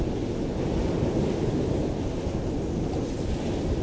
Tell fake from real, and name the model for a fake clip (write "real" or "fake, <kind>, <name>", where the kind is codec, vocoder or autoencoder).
real